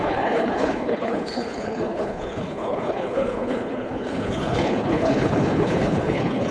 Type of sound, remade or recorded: remade